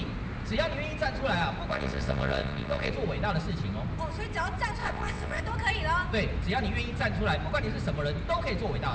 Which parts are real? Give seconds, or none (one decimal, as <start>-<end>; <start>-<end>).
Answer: 0.0-1.7; 2.9-4.8; 5.4-8.9